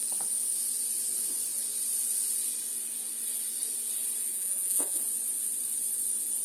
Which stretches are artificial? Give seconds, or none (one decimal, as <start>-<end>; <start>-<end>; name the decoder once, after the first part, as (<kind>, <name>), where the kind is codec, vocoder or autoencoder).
4.3-5.0 (vocoder, Vocos)